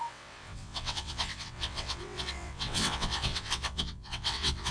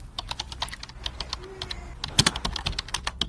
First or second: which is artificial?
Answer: first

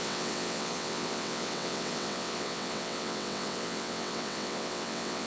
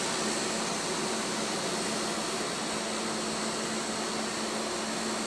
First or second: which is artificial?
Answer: first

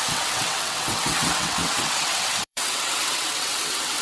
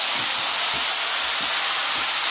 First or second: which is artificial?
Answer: first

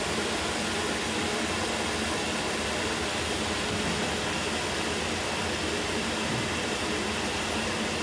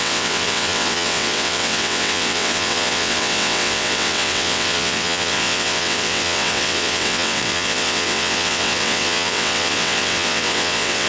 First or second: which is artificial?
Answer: second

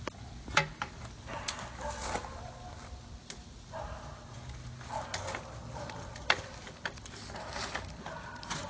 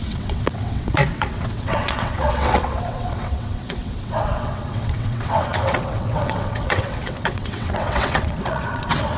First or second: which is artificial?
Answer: second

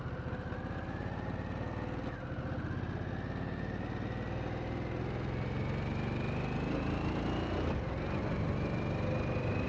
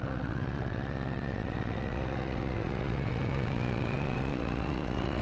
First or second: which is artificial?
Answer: second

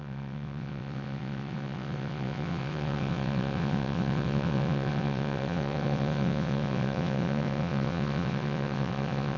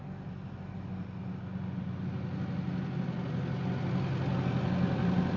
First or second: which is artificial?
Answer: first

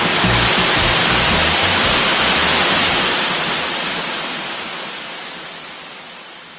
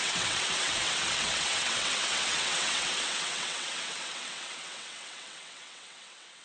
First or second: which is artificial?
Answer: second